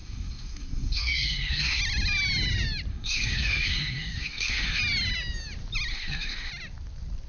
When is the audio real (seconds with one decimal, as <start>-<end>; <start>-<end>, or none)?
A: 1.8-2.9; 4.8-5.9; 6.5-7.3

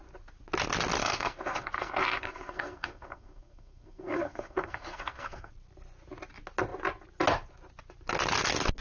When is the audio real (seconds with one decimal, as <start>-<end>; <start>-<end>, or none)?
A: 0.0-1.0; 5.5-8.8

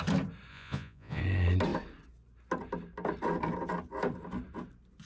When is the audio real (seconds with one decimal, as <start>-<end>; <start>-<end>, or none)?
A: 0.0-0.5; 1.2-5.1

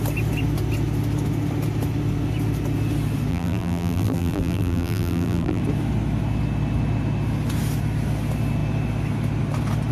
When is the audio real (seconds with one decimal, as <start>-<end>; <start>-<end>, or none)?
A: 0.0-3.3; 5.6-9.9

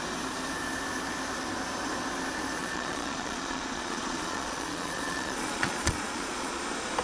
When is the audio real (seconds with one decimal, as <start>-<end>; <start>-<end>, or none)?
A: 0.0-2.6; 6.6-7.0

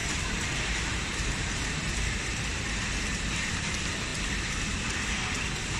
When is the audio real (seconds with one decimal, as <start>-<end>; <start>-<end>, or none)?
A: 3.5-5.8

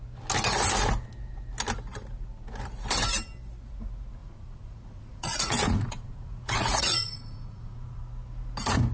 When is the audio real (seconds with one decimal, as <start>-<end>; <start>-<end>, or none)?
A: 0.0-4.2; 8.0-8.9

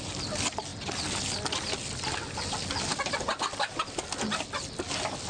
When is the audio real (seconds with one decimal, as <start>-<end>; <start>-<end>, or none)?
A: 0.0-5.3